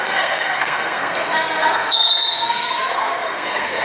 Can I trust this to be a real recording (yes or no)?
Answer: no